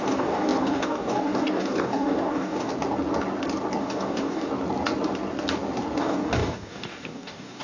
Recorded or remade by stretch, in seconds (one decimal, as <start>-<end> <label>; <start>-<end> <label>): 0.0-2.7 remade; 2.7-3.8 recorded; 3.8-4.5 remade; 4.5-6.0 recorded; 6.0-7.6 remade